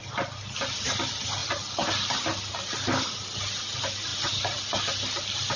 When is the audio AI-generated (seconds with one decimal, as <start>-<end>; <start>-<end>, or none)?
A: none